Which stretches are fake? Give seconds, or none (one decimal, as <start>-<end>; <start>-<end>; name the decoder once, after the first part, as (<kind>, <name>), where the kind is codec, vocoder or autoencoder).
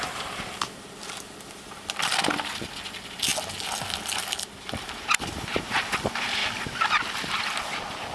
none